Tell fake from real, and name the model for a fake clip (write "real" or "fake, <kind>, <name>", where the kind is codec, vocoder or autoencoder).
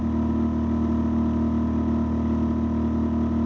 real